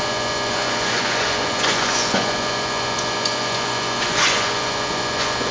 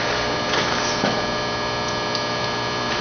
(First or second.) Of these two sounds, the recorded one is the second